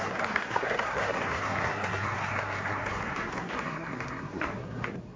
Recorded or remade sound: remade